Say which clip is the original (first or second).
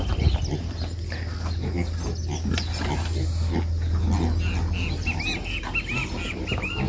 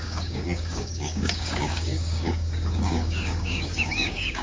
first